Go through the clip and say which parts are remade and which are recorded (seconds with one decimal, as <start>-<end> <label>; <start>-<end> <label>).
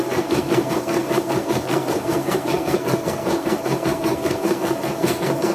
0.0-5.5 remade